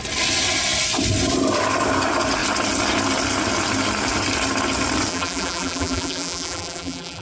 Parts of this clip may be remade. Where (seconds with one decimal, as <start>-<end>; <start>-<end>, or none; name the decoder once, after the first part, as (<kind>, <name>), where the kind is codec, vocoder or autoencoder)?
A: 5.1-7.2 (vocoder, BigVGAN v2)